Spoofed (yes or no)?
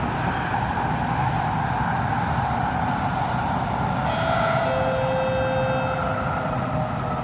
no